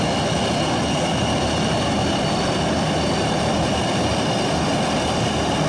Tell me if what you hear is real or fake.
real